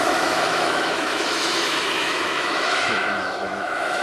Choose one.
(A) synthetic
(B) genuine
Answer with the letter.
A